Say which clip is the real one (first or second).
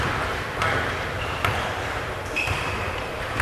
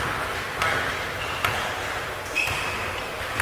second